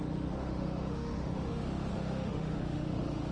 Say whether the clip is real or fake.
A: fake